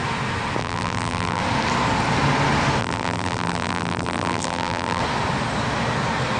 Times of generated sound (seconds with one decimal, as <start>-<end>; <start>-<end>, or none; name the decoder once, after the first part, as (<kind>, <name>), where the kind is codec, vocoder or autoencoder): 0.6-1.4 (vocoder, BigVGAN v2); 2.8-5.0